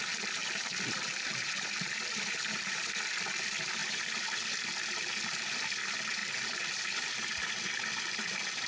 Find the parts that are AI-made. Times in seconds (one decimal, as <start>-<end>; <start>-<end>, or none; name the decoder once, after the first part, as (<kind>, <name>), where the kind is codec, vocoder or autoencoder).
0.4-2.8 (vocoder, BigVGAN v2); 3.8-4.9; 6.2-7.4